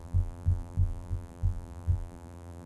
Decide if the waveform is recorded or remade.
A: remade